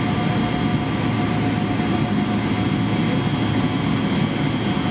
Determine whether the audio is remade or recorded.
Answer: recorded